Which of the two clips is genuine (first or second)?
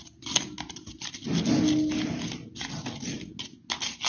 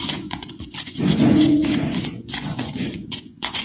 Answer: first